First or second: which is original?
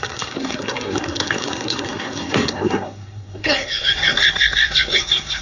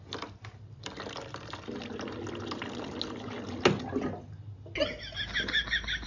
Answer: second